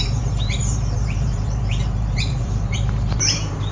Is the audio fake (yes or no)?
yes